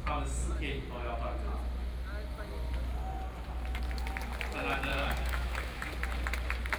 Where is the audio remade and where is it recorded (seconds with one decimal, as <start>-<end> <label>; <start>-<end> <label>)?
0.0-4.9 recorded; 4.9-5.9 remade; 5.9-6.8 recorded